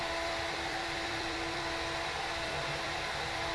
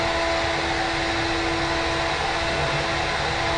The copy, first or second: first